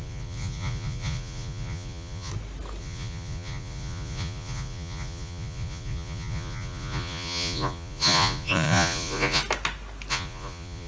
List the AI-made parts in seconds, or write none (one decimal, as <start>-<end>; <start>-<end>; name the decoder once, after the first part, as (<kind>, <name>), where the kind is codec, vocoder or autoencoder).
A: 0.0-2.3 (vocoder, Vocos); 2.8-9.4; 10.1-10.9